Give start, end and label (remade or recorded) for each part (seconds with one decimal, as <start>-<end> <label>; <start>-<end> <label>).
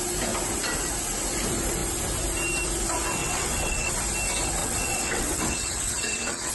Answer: 0.0-3.2 recorded; 3.2-3.9 remade; 3.9-4.6 recorded; 4.6-6.5 remade